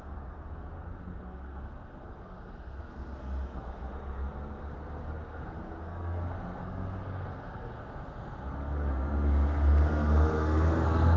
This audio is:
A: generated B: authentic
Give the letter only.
A